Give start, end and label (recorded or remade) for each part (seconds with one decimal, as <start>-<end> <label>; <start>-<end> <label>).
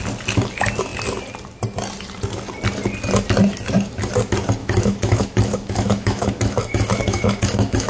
0.0-4.6 recorded; 4.6-7.9 remade